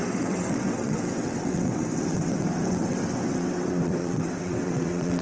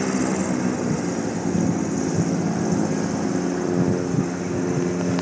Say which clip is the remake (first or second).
first